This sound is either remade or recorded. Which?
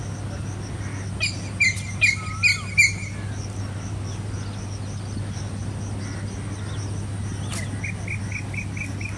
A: recorded